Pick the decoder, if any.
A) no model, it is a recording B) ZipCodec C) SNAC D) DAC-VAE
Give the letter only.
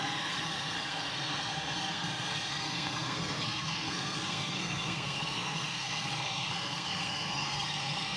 C